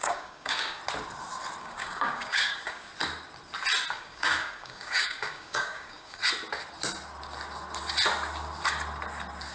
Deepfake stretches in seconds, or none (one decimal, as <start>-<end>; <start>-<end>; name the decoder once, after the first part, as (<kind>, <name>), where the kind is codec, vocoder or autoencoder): 0.0-0.8 (codec, DAC); 1.6-2.9; 3.9-6.2